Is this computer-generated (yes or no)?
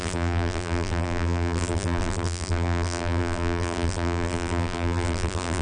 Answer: yes